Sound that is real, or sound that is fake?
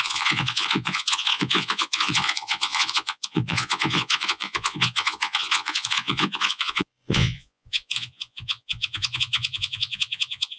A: fake